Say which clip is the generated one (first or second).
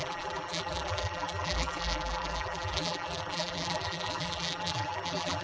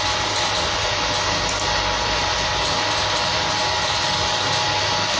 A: first